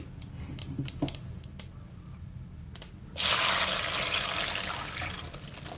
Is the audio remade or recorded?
recorded